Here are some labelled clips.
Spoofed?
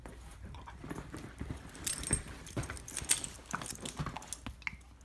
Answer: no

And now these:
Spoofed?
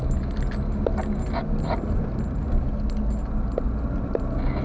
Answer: no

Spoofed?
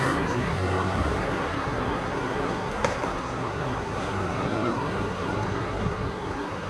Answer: yes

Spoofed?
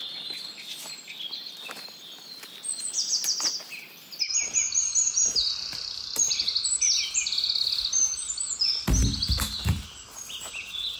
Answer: no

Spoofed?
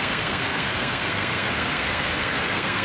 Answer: yes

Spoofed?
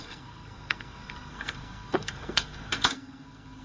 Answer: yes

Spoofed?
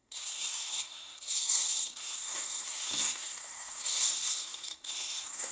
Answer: yes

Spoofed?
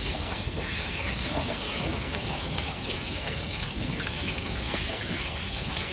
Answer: yes